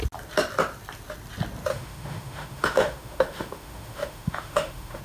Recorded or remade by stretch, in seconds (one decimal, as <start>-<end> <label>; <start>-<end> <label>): 0.0-1.7 recorded; 1.7-5.0 remade